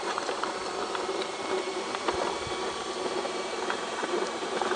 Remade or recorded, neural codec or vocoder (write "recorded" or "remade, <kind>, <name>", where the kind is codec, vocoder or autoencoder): remade, vocoder, BigVGAN v2